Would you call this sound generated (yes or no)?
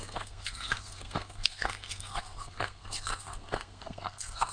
yes